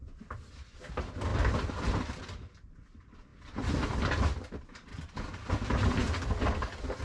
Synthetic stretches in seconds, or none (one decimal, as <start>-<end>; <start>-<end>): 1.3-2.2; 4.9-5.5